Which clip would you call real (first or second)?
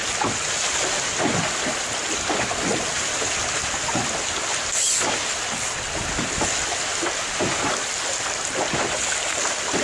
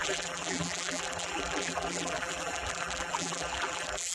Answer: first